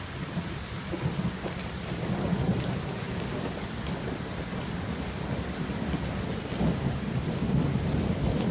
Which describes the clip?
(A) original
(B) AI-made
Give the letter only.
B